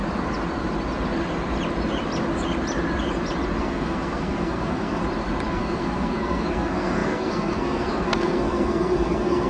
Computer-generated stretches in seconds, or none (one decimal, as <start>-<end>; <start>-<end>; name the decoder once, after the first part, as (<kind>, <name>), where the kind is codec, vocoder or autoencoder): 3.6-5.0 (codec, SNAC); 5.5-9.5